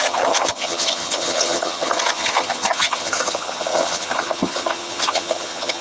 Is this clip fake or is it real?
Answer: fake